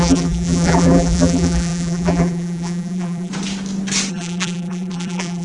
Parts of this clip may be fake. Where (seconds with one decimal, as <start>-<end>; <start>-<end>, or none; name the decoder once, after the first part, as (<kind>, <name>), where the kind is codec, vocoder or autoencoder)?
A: 0.0-3.3 (vocoder, BigVGAN v2); 4.1-5.4